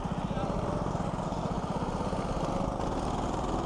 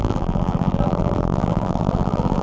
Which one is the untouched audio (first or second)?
first